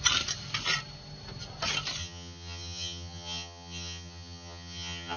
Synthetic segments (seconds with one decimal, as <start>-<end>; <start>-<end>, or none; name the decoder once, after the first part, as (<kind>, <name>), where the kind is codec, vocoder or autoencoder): 2.0-5.2 (vocoder, HiFi-GAN)